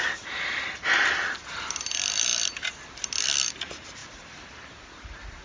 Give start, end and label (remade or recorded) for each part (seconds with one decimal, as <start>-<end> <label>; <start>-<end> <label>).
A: 0.0-5.4 recorded